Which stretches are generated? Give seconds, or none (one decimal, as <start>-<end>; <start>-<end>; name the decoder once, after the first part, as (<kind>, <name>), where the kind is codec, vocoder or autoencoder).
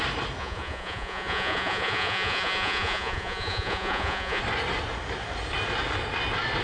0.4-4.4 (vocoder, Vocos)